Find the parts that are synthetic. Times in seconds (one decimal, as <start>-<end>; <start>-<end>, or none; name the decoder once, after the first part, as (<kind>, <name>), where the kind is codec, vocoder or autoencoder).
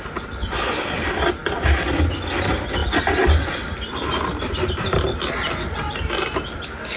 none